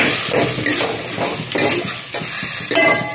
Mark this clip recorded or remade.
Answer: recorded